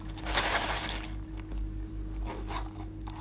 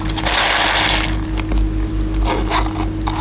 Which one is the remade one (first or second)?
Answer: first